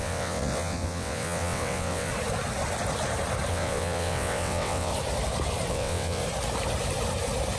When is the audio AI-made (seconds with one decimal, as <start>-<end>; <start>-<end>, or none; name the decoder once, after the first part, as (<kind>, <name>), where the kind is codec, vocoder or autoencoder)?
0.0-2.1 (vocoder, WaveNeXt); 3.5-4.9; 5.7-6.2